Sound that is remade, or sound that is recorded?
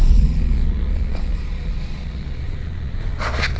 remade